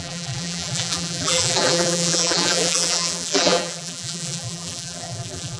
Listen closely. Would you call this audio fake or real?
fake